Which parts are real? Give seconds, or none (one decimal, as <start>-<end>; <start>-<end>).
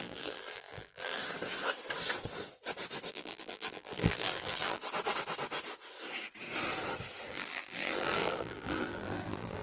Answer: 1.2-3.1; 4.8-7.3